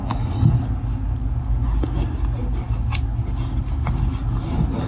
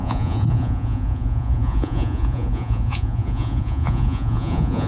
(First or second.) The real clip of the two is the first